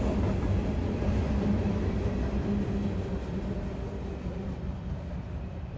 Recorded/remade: recorded